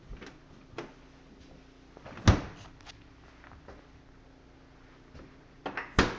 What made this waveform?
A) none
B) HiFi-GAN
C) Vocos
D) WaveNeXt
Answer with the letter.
A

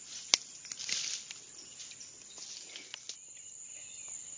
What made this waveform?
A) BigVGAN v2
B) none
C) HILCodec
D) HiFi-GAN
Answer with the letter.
B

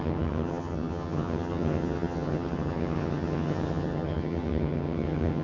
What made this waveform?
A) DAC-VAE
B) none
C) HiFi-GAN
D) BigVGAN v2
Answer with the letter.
C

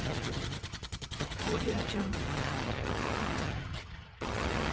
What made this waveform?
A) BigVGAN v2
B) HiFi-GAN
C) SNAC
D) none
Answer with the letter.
B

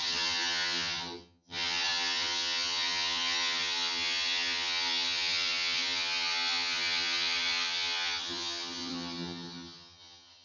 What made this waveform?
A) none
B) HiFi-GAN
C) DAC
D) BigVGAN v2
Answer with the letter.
B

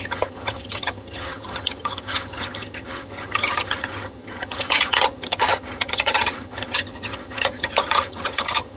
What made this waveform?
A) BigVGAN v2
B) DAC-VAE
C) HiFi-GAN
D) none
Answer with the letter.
C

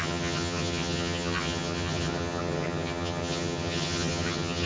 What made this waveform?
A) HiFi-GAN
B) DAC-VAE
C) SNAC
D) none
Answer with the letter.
A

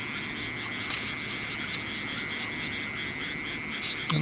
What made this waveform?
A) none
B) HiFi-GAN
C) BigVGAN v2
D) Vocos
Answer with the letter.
A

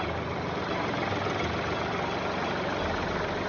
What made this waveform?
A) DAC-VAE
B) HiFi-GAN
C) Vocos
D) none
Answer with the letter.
D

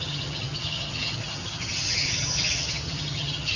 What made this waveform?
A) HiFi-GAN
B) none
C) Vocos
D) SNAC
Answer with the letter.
A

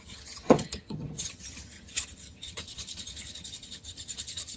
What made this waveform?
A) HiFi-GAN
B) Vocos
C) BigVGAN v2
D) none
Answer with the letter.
A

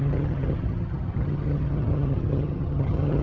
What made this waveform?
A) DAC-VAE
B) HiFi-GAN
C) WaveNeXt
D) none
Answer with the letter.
B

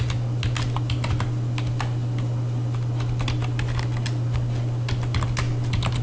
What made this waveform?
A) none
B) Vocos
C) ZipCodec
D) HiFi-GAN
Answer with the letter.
A